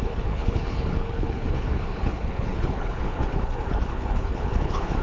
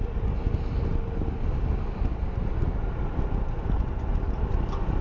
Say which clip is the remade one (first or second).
first